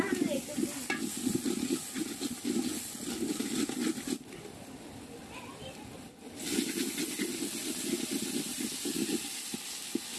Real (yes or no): yes